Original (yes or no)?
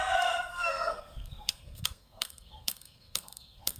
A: no